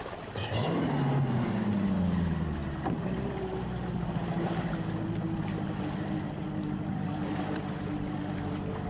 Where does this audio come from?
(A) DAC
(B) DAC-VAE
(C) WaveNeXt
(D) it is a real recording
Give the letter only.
D